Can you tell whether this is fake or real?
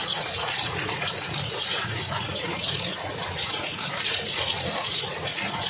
fake